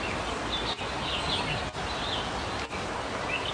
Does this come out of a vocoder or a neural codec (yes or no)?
no